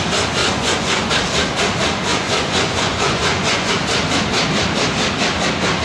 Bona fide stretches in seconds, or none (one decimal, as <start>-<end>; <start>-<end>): 0.0-0.4; 1.1-2.1; 3.7-5.8